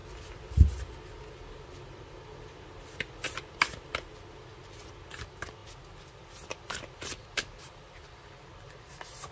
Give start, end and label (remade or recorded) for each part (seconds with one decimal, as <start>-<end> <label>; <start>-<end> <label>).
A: 0.0-9.3 recorded